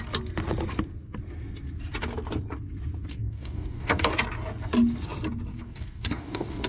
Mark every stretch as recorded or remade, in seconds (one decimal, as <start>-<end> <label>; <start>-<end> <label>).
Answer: 0.0-3.1 recorded; 3.1-4.1 remade; 4.1-5.5 recorded; 5.5-6.7 remade